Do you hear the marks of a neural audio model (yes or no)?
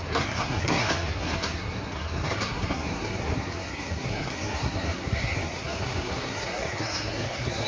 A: yes